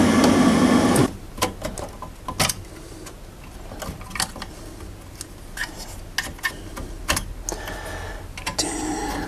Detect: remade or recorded recorded